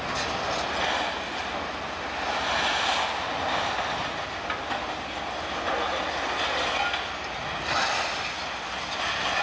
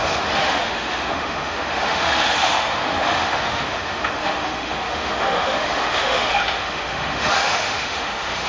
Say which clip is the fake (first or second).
second